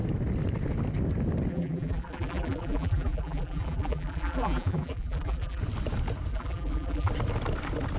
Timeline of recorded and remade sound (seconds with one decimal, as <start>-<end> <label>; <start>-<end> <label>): 0.0-1.5 recorded; 1.5-5.6 remade; 5.6-6.3 recorded; 6.3-7.1 remade; 7.1-8.0 recorded